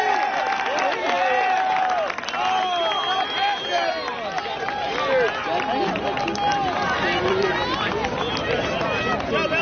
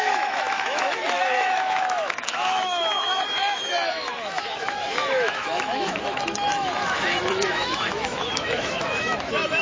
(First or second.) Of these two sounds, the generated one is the second